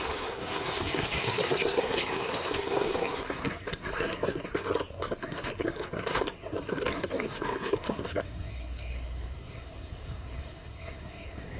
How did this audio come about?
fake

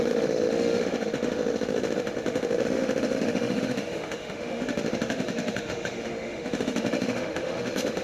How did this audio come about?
fake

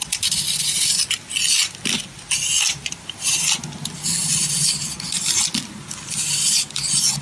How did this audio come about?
real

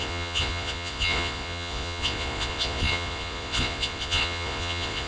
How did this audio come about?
fake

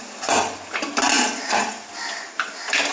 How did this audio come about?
real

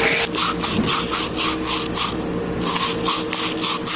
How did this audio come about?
real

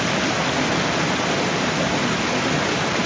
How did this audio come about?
real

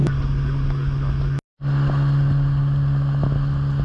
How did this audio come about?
real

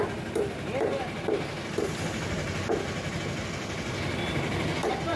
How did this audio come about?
real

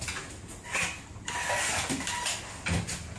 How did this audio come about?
real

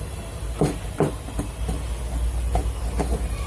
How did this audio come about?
real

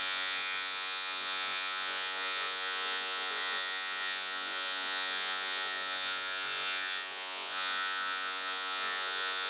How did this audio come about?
fake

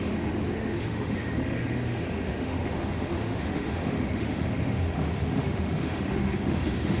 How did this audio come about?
fake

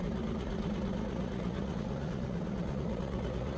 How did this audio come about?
fake